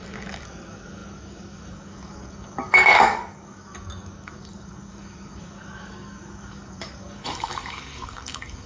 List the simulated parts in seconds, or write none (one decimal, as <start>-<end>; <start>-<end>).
0.0-8.7